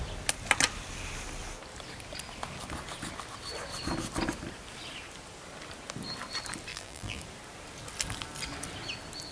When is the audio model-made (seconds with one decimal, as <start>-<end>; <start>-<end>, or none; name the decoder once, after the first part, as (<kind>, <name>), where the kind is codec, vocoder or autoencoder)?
6.7-7.2 (vocoder, BigVGAN v2)